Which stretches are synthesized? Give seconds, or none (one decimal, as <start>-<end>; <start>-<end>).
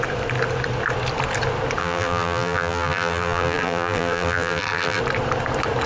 1.8-5.0